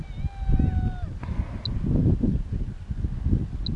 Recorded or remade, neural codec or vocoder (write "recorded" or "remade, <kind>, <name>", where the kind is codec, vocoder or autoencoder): recorded